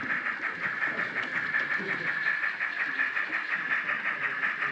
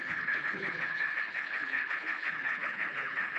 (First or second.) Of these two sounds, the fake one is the second